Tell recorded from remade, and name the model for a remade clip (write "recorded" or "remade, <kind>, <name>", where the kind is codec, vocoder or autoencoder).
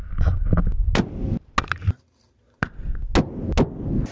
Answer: recorded